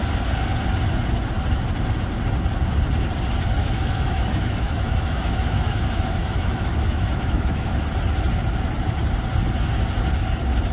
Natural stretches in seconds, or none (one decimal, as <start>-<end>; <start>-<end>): 0.0-3.6; 7.8-10.7